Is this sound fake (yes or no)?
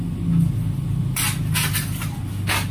no